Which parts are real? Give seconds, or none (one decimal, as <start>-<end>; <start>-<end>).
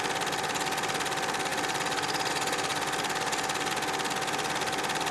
0.0-5.1